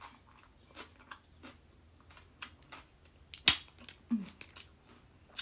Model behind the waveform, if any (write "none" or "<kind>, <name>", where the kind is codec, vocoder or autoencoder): none